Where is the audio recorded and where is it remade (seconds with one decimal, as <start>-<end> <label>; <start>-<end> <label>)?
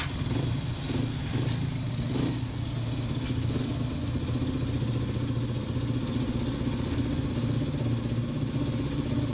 0.0-9.3 recorded